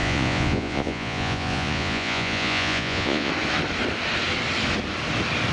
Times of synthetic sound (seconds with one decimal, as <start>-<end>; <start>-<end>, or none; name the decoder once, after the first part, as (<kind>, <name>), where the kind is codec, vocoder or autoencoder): 0.0-3.3 (vocoder, Vocos)